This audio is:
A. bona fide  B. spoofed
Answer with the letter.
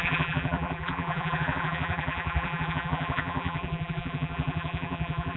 B